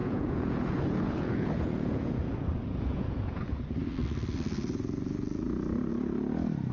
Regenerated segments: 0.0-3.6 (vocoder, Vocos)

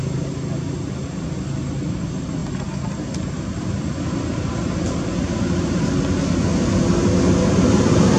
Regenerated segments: none

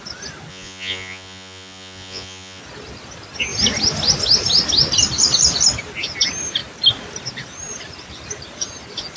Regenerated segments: 0.5-2.6 (vocoder, Vocos)

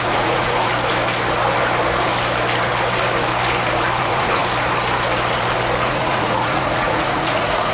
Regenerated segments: 0.0-0.7 (vocoder, Vocos); 4.0-4.4; 5.8-7.7

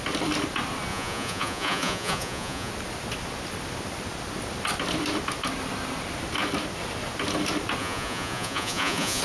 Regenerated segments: 0.9-2.7 (vocoder, Vocos); 7.8-9.2

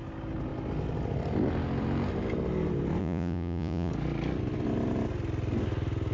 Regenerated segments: 3.0-3.9 (vocoder, Vocos)